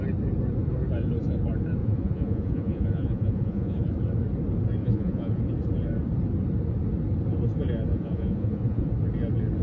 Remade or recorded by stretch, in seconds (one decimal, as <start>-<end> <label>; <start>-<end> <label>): 0.0-1.8 recorded; 1.8-3.8 remade; 3.8-4.8 recorded; 4.8-5.4 remade; 5.4-7.9 recorded; 7.9-8.9 remade; 8.9-9.6 recorded